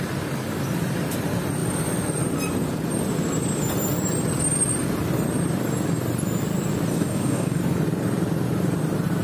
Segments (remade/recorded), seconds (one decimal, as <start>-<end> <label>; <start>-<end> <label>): 0.0-6.9 recorded; 6.9-7.6 remade; 7.6-9.2 recorded